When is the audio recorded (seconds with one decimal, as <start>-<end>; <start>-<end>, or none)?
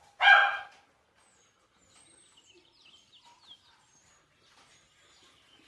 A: 0.0-5.7